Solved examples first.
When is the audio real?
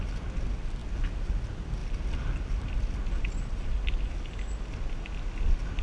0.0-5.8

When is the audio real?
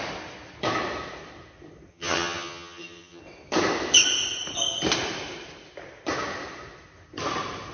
0.0-1.9; 3.2-7.7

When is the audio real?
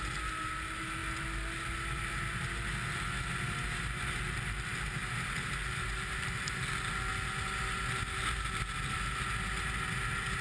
0.0-10.4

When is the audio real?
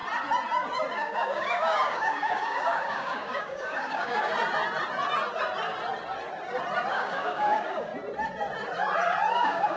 0.0-0.9; 4.3-6.9; 7.9-9.3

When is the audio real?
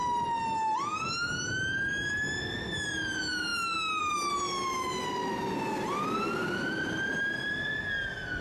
0.0-8.4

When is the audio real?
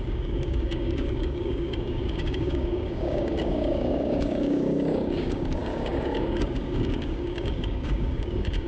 none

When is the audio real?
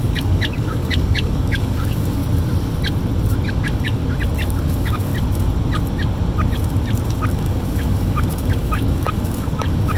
2.2-3.5; 4.0-4.6; 5.1-7.3